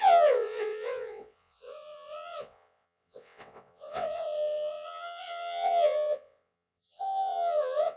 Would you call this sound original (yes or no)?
no